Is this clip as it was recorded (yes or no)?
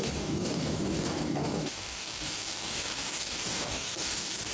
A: no